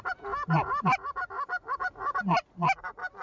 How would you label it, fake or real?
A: real